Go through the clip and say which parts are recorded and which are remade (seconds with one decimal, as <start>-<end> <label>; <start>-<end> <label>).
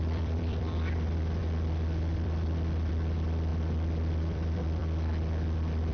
0.0-3.5 remade; 3.5-4.1 recorded; 4.1-4.8 remade; 4.8-5.9 recorded